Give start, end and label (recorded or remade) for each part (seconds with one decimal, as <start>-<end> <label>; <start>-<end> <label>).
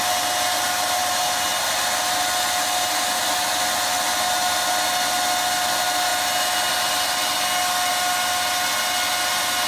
0.0-9.7 recorded